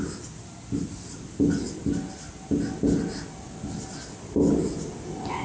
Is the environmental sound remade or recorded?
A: recorded